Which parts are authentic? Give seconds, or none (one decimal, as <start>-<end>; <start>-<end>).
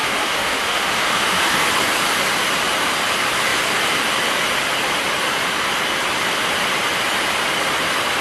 1.7-8.2